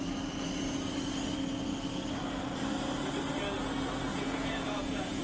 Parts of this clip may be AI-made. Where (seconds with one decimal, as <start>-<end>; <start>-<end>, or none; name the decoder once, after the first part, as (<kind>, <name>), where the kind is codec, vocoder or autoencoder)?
4.1-5.2 (vocoder, Vocos)